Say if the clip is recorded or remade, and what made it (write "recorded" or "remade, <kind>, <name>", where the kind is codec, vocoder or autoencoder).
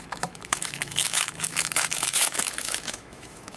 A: remade, autoencoder, DAC-VAE